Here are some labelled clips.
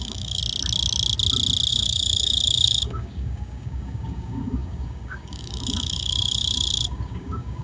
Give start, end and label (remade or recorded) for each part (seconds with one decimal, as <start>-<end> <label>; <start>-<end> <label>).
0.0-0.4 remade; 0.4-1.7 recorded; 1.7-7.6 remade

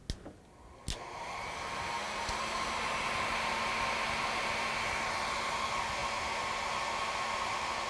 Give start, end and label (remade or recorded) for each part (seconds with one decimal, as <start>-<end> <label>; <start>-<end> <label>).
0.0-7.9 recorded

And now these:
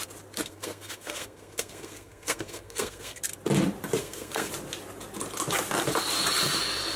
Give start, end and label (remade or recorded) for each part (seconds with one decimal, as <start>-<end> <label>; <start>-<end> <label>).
0.0-0.4 recorded; 0.4-3.2 remade; 3.2-4.0 recorded; 4.0-4.5 remade; 4.5-7.0 recorded

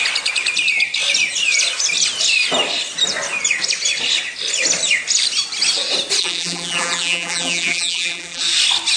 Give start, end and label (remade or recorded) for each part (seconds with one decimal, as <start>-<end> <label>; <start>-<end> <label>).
0.0-6.2 recorded; 6.2-8.4 remade; 8.4-9.0 recorded